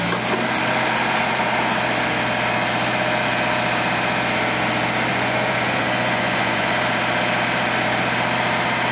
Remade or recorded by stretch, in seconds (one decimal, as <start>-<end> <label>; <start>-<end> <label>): 0.0-5.1 recorded; 5.1-6.7 remade; 6.7-8.9 recorded